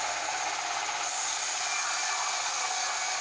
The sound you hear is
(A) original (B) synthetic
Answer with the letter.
A